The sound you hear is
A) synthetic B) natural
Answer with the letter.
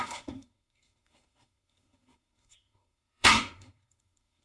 A